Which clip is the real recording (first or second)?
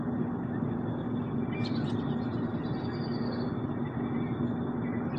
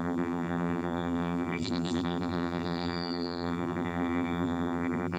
first